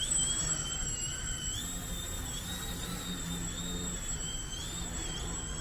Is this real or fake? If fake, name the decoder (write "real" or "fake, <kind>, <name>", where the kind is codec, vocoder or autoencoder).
real